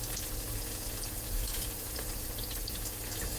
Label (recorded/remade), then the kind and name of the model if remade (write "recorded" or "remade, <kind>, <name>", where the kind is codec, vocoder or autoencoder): remade, vocoder, Vocos